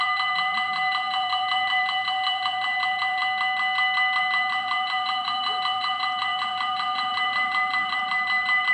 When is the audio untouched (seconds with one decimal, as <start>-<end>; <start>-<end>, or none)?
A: 3.2-4.2